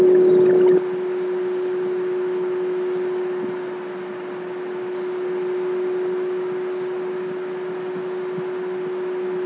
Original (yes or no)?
yes